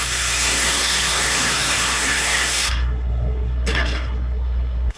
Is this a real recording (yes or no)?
no